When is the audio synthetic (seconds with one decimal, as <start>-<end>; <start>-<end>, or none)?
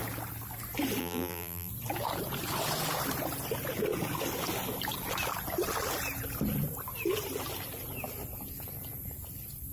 1.0-1.7